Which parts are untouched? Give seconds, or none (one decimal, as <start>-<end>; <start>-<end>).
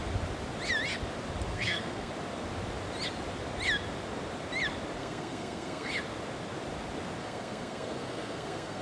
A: 0.0-1.5; 2.1-5.0; 5.9-7.2